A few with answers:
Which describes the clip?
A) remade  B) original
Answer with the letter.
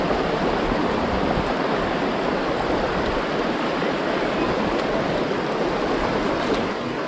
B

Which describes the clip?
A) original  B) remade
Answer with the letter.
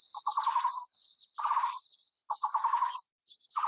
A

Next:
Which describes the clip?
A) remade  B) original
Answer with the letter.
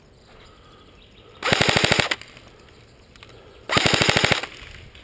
B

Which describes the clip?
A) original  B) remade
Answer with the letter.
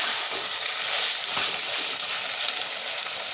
B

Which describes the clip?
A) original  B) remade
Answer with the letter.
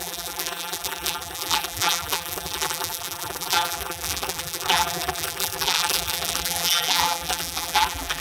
B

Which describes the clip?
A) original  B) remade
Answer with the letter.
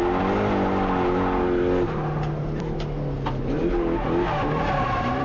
A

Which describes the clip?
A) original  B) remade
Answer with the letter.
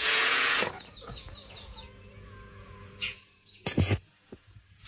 B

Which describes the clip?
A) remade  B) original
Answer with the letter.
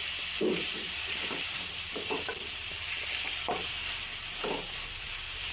A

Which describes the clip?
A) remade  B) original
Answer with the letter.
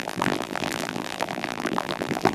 A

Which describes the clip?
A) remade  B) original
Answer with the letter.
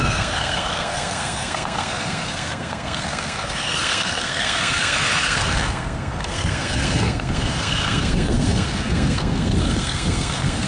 A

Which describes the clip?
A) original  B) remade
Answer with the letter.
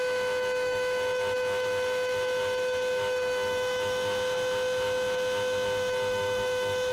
B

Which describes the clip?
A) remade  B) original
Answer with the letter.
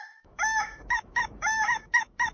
A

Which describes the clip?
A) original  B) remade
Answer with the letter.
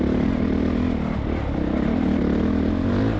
A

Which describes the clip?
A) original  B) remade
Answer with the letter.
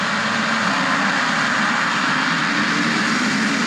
A